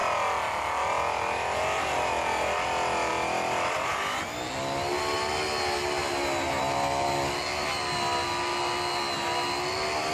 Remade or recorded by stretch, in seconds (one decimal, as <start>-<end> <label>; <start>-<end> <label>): 0.0-10.1 recorded